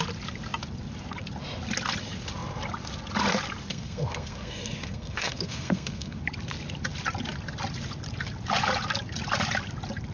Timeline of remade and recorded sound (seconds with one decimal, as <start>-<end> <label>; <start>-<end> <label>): 0.0-3.7 recorded; 3.7-6.2 remade; 6.2-10.1 recorded